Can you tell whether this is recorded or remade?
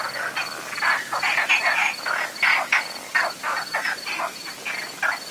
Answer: recorded